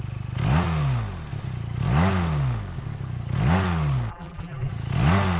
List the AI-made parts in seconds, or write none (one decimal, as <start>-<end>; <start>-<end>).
4.1-4.7